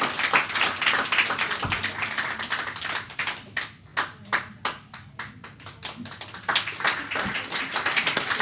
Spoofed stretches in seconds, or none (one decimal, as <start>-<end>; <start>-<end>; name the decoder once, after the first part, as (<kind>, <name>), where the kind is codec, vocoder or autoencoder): none